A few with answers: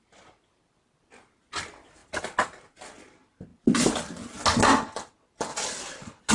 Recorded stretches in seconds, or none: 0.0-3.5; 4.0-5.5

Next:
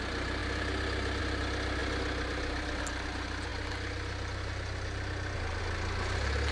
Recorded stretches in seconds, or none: 0.0-6.5

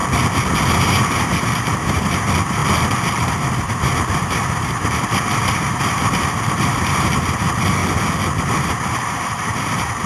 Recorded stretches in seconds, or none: 0.0-0.7; 2.6-3.2; 7.8-8.4

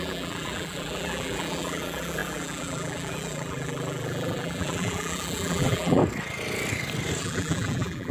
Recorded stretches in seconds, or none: 6.0-7.2

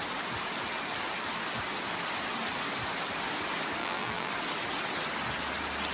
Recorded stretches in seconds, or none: 0.0-3.8; 4.3-5.9

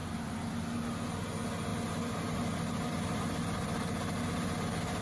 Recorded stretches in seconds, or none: 0.5-5.0

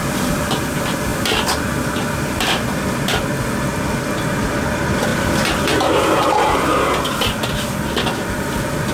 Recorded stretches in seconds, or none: 0.0-8.9